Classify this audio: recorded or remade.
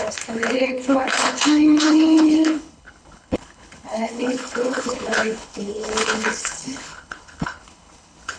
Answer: remade